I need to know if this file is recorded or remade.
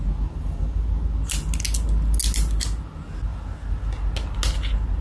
recorded